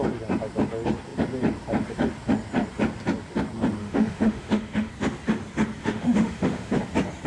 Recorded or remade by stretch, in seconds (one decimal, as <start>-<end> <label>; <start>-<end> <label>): 0.0-3.8 recorded; 3.8-4.9 remade; 4.9-5.8 recorded; 5.8-6.8 remade; 6.8-7.3 recorded